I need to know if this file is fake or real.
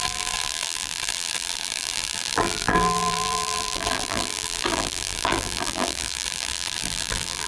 fake